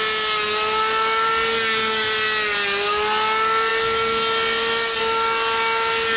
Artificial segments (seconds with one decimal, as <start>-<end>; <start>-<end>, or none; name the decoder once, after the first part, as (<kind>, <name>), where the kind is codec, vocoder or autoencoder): none